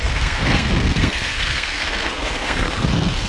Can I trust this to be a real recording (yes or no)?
no